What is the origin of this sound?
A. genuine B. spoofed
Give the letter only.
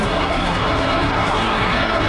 B